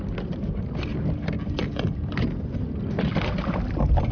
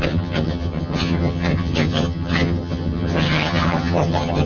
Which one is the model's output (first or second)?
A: second